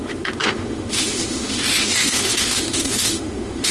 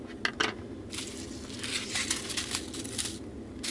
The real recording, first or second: second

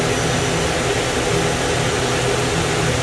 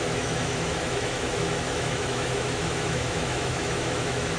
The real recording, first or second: first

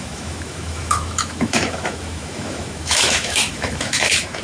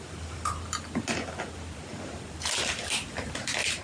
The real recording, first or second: second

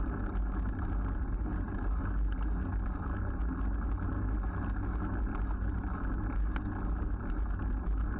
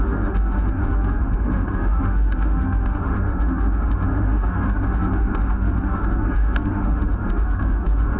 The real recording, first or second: first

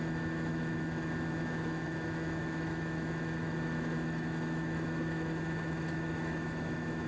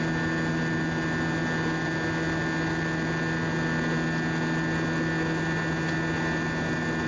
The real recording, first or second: second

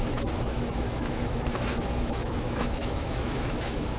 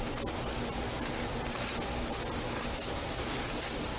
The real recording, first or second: second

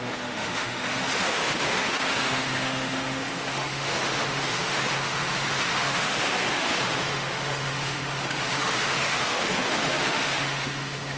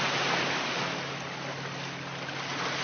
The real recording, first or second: second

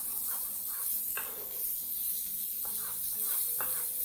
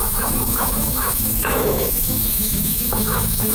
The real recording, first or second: first